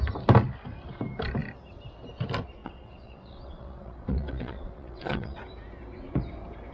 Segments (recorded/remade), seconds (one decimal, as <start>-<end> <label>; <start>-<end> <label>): 0.0-2.6 recorded; 2.6-5.4 remade; 5.4-6.7 recorded